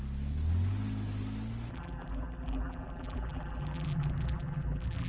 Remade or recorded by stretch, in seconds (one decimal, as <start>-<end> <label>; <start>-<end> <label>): 0.0-1.7 recorded; 1.7-5.1 remade